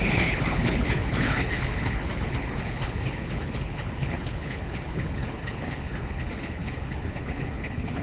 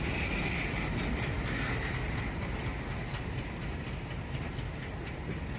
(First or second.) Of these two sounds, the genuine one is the second